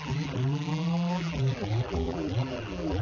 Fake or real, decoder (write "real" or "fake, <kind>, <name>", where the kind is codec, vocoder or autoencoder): fake, vocoder, BigVGAN v2